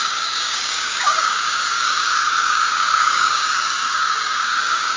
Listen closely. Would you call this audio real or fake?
fake